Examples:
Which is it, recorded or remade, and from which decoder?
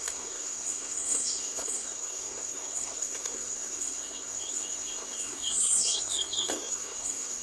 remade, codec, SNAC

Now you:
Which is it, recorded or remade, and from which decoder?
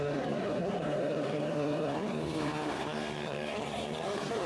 remade, codec, SNAC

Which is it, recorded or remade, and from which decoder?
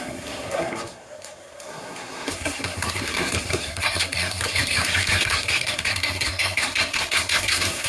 remade, codec, SNAC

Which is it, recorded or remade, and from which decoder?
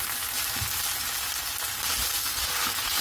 recorded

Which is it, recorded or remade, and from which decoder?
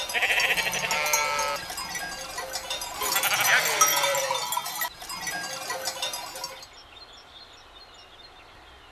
recorded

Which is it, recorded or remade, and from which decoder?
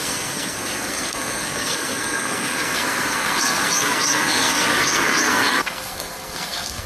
remade, codec, SNAC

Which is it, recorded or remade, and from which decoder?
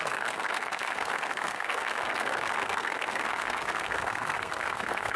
remade, codec, SNAC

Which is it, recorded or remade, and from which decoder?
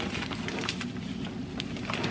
recorded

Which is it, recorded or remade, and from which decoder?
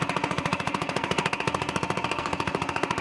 remade, codec, SNAC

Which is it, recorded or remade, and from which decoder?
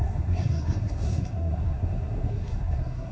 remade, codec, SNAC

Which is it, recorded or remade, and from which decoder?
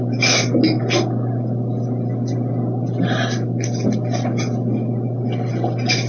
recorded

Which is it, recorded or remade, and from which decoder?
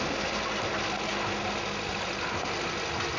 recorded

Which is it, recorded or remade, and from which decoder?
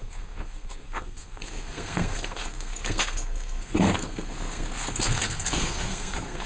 remade, codec, SNAC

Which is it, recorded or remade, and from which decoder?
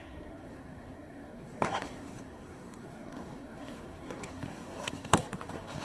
remade, codec, SNAC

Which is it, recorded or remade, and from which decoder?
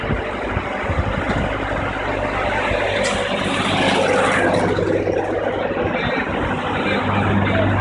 recorded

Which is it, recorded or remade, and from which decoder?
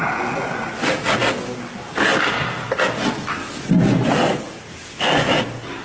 recorded